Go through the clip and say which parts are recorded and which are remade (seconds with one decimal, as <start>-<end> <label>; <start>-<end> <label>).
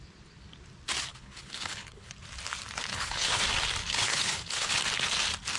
0.0-1.1 recorded; 1.1-2.1 remade; 2.1-2.9 recorded; 2.9-3.4 remade; 3.4-3.8 recorded; 3.8-4.8 remade; 4.8-5.6 recorded